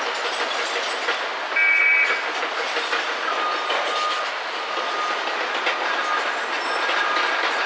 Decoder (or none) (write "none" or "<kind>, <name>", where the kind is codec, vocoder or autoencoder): none